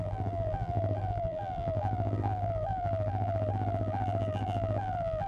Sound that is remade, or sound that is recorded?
remade